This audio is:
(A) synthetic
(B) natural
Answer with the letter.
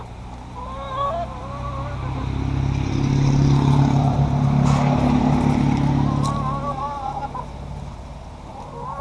B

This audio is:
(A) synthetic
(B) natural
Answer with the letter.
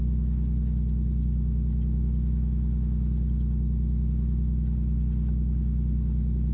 B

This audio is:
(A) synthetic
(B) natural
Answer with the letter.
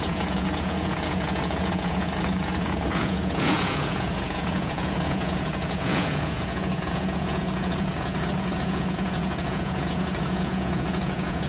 A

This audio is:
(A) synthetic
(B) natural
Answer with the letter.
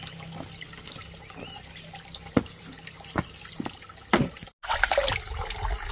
B